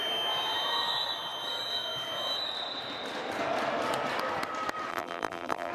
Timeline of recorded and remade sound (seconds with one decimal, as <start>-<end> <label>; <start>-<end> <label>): 0.0-4.9 recorded; 4.9-5.7 remade